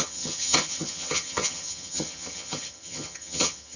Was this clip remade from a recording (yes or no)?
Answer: yes